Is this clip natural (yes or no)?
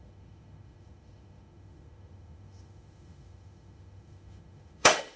no